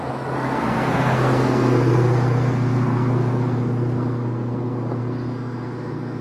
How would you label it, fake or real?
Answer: fake